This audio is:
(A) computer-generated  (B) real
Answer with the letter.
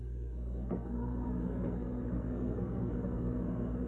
A